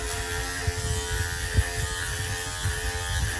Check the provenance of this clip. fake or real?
real